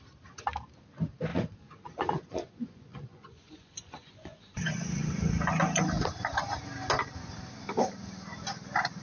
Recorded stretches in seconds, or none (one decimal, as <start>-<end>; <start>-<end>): 0.0-1.3; 5.2-9.0